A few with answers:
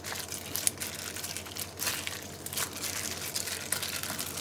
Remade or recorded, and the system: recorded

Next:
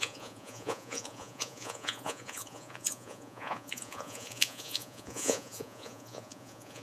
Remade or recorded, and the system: remade, vocoder, Vocos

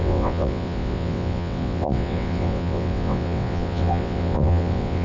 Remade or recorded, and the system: remade, vocoder, WaveNeXt